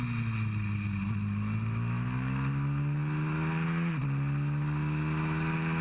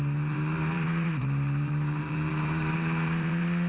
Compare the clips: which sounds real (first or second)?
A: first